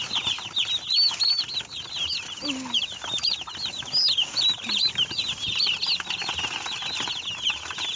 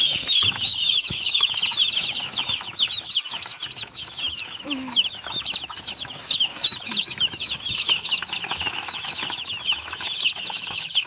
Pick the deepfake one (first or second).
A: second